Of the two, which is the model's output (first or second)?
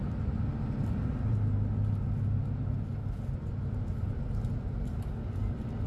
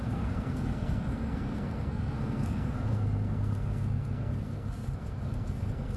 second